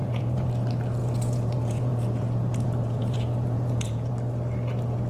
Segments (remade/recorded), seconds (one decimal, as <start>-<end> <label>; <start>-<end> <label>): 0.0-0.5 remade; 0.5-1.0 recorded; 1.0-4.1 remade; 4.1-5.1 recorded